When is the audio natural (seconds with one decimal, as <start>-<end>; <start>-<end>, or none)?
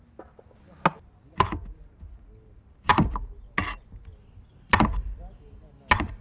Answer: 0.0-6.2